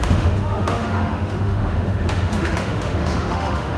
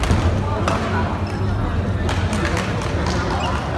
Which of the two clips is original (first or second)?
second